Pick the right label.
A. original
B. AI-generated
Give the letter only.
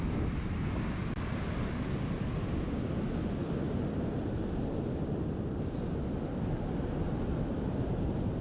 A